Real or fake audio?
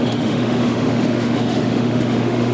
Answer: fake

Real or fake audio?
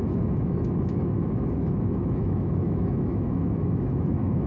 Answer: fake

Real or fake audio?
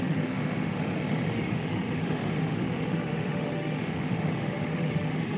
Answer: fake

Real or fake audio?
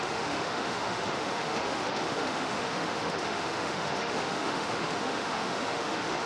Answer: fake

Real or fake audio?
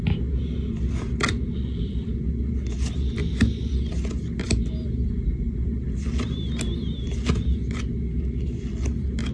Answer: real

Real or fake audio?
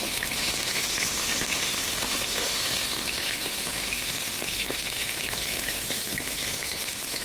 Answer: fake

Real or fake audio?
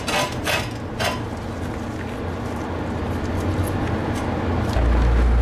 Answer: real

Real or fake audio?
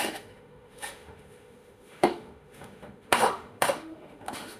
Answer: fake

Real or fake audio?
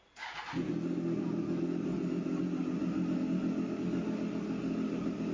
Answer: real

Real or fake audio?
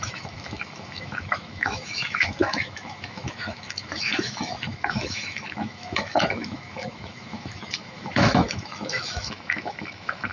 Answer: fake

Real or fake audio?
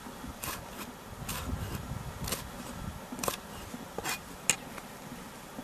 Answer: real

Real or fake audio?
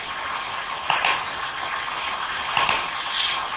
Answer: real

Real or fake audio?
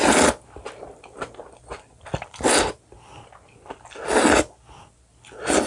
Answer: real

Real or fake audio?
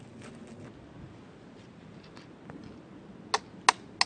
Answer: real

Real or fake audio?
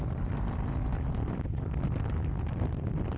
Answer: real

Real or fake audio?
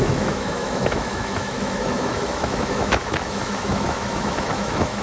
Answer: fake